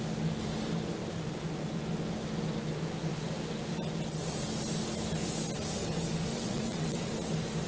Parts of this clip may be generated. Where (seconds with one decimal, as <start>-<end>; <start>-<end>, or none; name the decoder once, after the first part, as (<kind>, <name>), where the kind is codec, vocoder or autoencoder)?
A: 6.3-7.1 (vocoder, WaveNeXt)